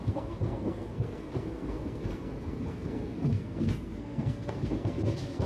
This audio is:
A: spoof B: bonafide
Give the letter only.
A